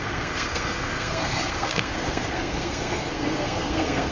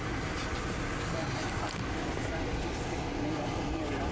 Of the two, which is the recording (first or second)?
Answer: second